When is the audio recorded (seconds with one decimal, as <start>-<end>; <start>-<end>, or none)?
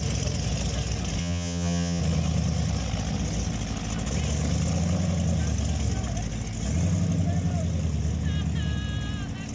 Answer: 0.0-1.2; 2.0-9.5